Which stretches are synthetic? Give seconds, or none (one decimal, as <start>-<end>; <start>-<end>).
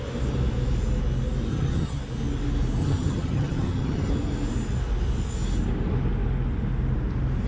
1.5-2.0; 2.8-4.1